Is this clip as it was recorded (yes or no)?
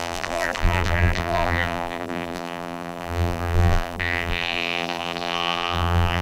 no